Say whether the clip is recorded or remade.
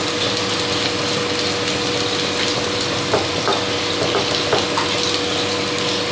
recorded